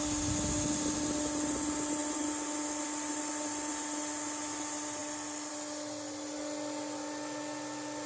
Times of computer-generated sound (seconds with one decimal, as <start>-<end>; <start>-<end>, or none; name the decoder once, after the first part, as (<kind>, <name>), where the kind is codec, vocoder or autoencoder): none